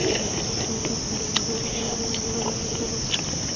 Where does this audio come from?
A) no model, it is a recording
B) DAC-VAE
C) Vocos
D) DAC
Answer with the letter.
A